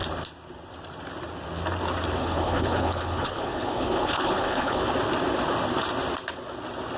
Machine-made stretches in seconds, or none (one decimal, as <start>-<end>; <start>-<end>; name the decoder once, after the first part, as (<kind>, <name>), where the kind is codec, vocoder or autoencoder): 2.2-4.8 (codec, HILCodec)